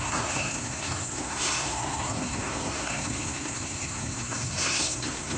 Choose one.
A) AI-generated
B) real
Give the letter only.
A